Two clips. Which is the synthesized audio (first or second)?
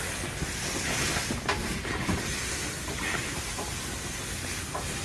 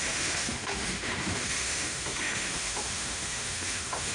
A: second